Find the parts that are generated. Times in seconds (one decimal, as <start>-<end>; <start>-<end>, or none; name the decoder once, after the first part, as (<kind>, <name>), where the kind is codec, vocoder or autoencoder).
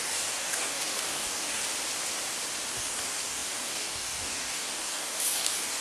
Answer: 0.0-1.6 (codec, DAC); 2.7-5.8